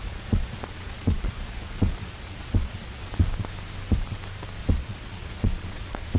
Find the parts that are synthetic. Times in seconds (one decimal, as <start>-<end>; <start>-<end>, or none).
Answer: 0.0-3.2; 4.6-6.2